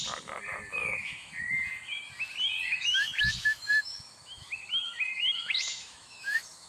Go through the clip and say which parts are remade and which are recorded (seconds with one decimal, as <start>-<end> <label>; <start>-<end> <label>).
0.0-0.8 recorded; 0.8-1.3 remade; 1.3-2.7 recorded; 2.7-6.7 remade